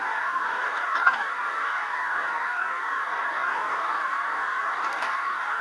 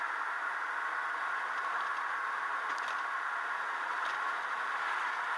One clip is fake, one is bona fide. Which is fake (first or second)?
first